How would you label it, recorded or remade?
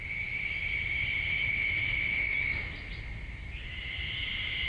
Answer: recorded